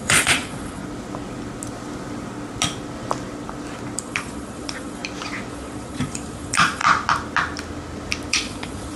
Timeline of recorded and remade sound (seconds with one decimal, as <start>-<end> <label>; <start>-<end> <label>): 0.0-0.8 remade; 0.8-4.0 recorded; 4.0-5.0 remade; 5.0-5.5 recorded; 5.5-6.8 remade; 6.8-8.3 recorded; 8.3-9.0 remade

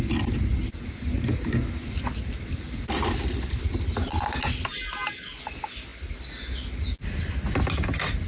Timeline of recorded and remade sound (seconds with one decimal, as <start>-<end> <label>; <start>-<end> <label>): 0.0-8.3 recorded

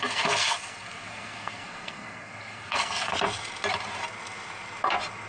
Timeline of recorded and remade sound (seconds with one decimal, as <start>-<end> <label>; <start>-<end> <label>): 0.0-3.1 remade; 3.1-5.3 recorded